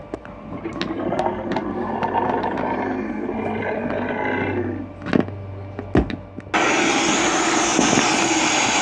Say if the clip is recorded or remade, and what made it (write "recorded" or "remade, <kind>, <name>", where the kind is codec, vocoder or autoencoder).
recorded